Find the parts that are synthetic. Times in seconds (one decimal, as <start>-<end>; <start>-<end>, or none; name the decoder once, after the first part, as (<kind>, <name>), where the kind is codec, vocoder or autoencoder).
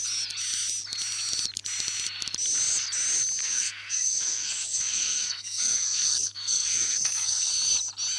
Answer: 3.4-7.5 (codec, SNAC)